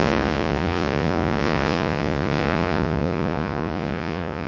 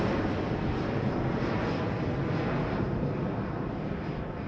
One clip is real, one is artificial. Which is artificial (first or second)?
first